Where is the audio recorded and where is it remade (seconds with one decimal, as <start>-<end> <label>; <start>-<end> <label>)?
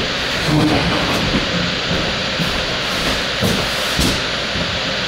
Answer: 0.0-0.4 recorded; 0.4-1.0 remade; 1.0-5.1 recorded